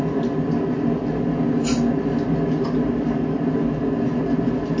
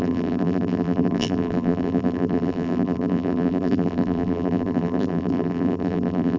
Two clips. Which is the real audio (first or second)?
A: first